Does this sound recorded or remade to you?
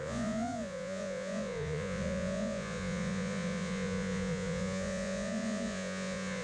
remade